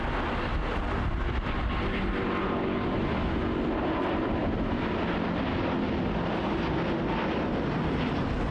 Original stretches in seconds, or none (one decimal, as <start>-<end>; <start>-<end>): 0.0-8.5